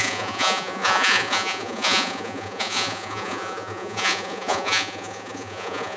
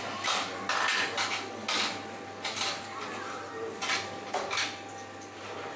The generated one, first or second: first